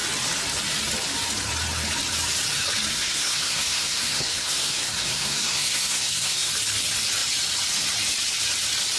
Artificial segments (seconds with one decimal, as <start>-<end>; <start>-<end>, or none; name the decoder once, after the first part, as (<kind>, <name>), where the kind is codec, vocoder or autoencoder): 2.9-6.5 (codec, SNAC)